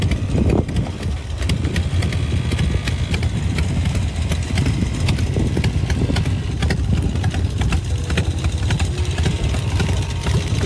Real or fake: real